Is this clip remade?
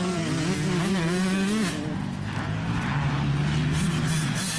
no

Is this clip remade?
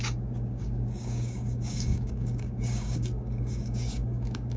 yes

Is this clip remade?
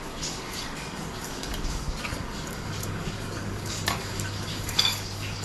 yes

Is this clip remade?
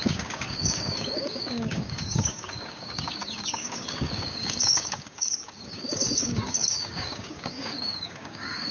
yes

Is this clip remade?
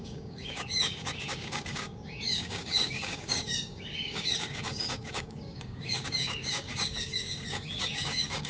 yes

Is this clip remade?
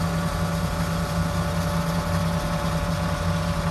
no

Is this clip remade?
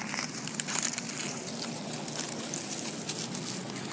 no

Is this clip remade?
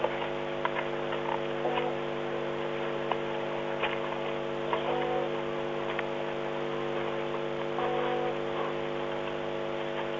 no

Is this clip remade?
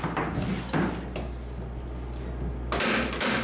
no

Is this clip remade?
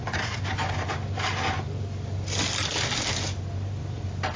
no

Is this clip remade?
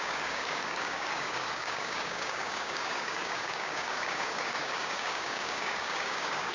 yes